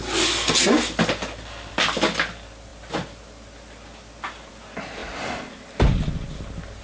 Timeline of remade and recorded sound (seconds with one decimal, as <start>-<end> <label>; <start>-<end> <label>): 0.0-6.8 recorded